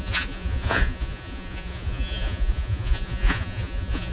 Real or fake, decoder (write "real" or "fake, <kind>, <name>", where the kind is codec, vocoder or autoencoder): fake, vocoder, Vocos